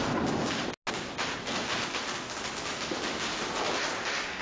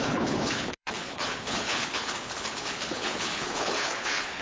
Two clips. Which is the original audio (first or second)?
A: first